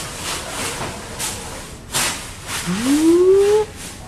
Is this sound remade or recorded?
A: recorded